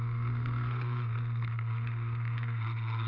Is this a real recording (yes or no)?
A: no